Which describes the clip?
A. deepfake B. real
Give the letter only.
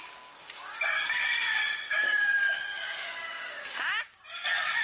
A